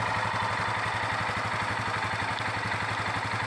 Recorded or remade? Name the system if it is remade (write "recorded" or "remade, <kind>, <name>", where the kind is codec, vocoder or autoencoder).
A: remade, vocoder, BigVGAN v2